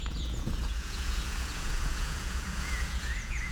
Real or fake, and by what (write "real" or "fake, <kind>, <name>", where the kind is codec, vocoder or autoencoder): fake, vocoder, Vocos